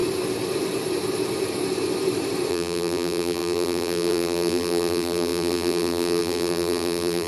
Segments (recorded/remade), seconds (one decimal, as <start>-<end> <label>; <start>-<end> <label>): 0.0-2.5 recorded; 2.5-7.3 remade